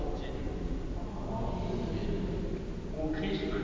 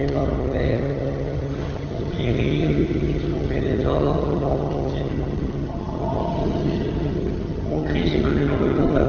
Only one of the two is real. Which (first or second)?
first